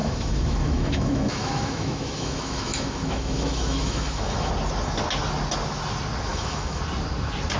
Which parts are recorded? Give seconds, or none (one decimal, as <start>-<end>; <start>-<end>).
4.5-6.3; 6.8-7.6